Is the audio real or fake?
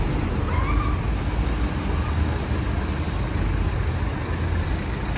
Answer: real